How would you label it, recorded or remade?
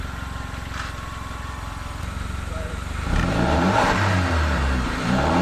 remade